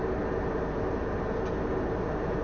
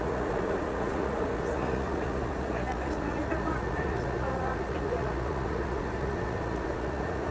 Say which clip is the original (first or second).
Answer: first